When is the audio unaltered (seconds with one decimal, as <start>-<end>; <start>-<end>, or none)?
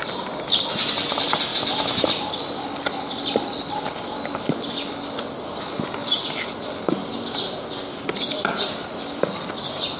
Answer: 0.0-10.0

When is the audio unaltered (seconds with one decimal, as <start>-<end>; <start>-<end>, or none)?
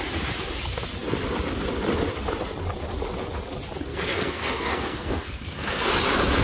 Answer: 0.0-3.9; 5.9-6.4